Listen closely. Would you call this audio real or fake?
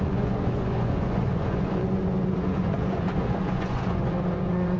fake